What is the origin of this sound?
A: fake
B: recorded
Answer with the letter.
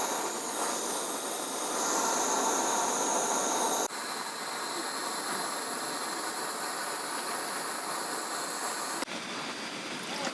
B